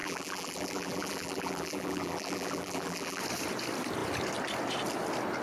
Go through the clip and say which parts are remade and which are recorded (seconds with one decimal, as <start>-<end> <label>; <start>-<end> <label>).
0.0-3.2 remade; 3.2-5.4 recorded